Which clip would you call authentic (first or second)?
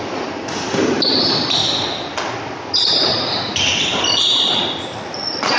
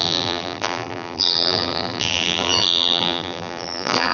first